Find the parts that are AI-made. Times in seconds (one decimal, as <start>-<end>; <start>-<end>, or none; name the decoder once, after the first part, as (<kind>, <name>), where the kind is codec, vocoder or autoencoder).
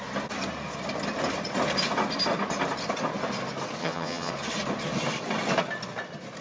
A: 3.8-4.3 (vocoder, HiFi-GAN)